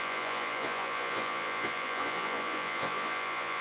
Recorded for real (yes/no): no